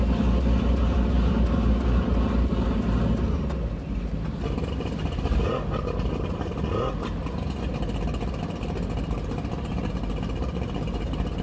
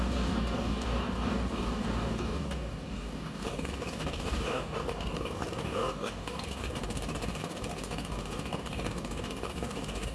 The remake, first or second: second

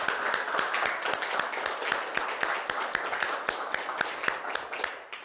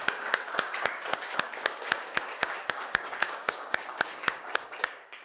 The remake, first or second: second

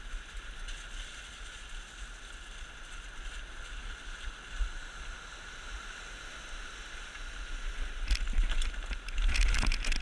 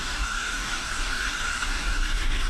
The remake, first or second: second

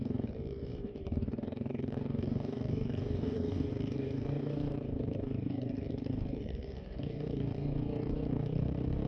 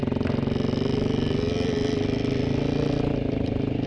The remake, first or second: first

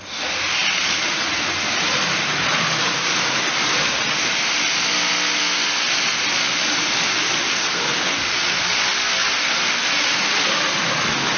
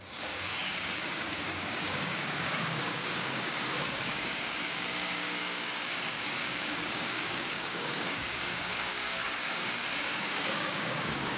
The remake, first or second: second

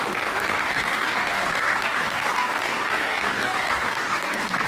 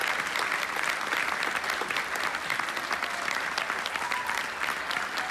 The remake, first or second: first